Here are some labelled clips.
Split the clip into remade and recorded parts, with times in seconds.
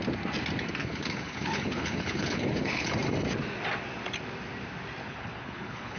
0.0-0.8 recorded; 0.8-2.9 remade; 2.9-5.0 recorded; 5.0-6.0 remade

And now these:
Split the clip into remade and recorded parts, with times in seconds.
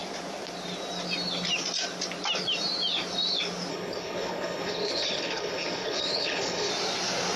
0.0-3.7 recorded; 3.7-6.7 remade; 6.7-7.4 recorded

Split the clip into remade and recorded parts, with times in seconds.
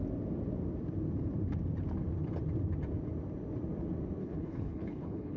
0.0-4.2 recorded; 4.2-5.4 remade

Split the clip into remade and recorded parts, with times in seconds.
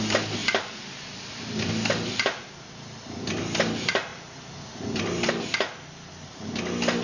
0.0-7.0 recorded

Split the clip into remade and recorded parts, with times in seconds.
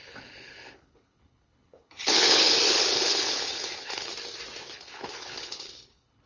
0.0-4.1 remade; 4.1-4.7 recorded; 4.7-6.3 remade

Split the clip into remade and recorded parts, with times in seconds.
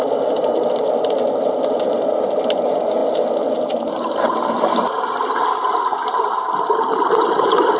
0.0-7.8 recorded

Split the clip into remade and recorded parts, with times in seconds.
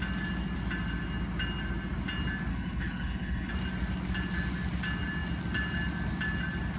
0.0-2.5 recorded; 2.5-3.5 remade; 3.5-6.8 recorded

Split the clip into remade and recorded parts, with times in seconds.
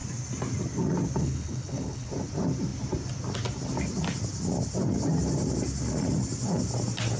0.0-1.2 recorded; 1.2-2.1 remade; 2.1-7.2 recorded